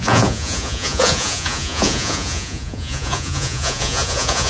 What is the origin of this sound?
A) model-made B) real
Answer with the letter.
A